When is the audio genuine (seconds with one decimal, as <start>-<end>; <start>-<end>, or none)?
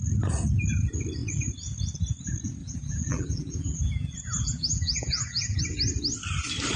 0.0-2.6; 5.6-6.8